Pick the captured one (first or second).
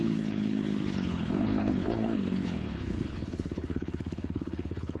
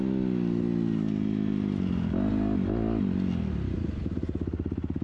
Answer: second